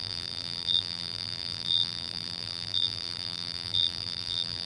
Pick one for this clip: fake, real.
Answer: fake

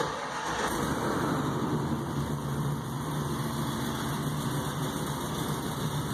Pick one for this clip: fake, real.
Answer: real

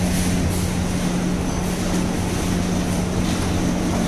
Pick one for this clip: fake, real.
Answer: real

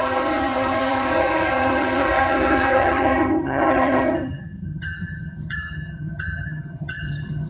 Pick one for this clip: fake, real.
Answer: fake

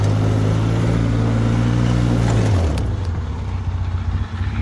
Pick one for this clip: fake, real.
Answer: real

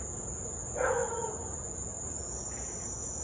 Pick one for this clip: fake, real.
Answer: fake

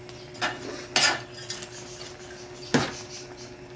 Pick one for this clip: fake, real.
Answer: real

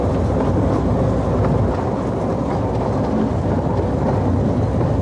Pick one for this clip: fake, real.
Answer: real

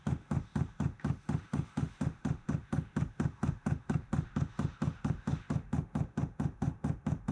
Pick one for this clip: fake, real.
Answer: fake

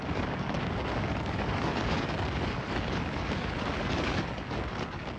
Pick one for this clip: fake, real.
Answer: fake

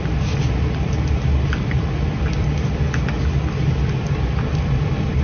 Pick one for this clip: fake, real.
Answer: real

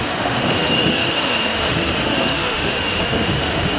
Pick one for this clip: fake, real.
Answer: fake